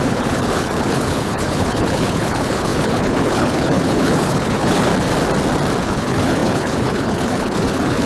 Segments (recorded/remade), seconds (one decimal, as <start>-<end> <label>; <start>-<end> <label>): 0.0-4.9 remade; 4.9-5.8 recorded; 5.8-8.1 remade